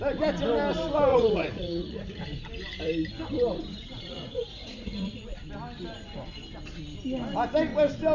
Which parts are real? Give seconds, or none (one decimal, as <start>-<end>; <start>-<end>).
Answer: 0.0-1.1; 2.2-3.7; 5.4-8.1